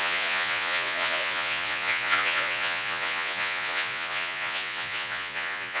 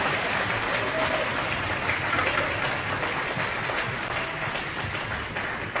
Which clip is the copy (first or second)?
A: first